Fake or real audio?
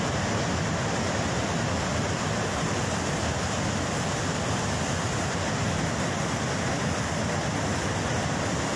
real